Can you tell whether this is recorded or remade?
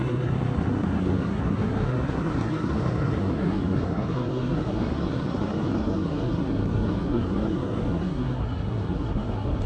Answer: remade